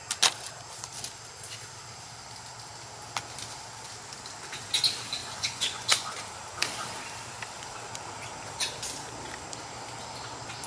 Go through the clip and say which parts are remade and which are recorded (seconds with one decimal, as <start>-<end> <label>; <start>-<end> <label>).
0.0-5.2 recorded; 5.2-6.1 remade; 6.1-10.7 recorded